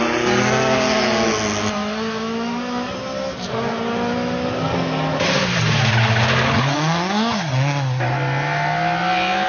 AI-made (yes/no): no